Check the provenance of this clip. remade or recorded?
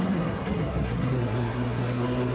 remade